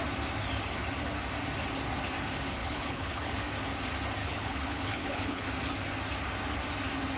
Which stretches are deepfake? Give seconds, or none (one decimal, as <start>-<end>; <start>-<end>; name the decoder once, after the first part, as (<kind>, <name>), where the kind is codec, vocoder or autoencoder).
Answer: 2.6-3.3 (codec, HILCodec); 4.2-5.4